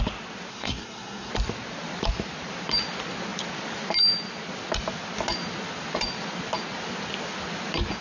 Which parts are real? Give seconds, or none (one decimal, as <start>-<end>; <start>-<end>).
0.0-0.5; 1.3-8.0